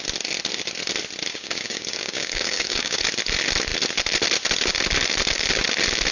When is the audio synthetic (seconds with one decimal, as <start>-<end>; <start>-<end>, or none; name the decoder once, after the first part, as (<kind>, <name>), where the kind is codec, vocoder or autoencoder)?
1.3-3.0 (codec, DAC)